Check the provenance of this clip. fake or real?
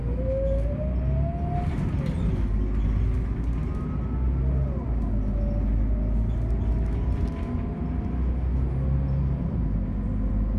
real